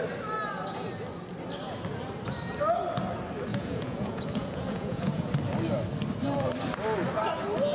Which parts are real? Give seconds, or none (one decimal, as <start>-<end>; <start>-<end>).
0.0-3.5; 5.3-7.7